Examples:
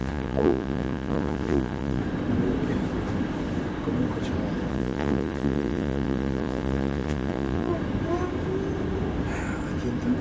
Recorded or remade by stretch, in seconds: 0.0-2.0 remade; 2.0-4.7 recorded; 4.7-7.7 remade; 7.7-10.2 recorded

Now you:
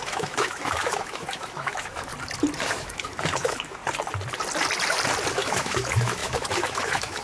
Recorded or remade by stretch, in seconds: 0.0-2.1 remade; 2.1-2.6 recorded; 2.6-3.8 remade; 3.8-5.3 recorded; 5.3-7.2 remade

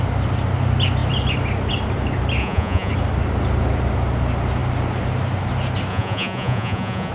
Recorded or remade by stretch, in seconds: 0.0-2.4 recorded; 2.4-2.9 remade; 2.9-5.9 recorded; 5.9-7.1 remade

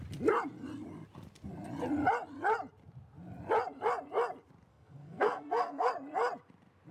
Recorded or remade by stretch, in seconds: 0.0-4.7 recorded; 4.7-5.9 remade; 5.9-6.9 recorded